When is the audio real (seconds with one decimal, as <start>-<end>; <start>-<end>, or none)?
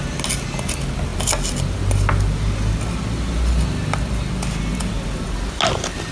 0.0-6.1